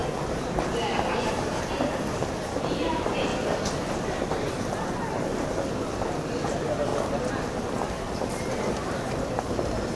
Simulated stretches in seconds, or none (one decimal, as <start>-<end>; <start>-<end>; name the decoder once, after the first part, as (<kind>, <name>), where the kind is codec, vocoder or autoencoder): 1.2-3.3 (vocoder, BigVGAN v2); 3.9-6.9; 7.7-10.0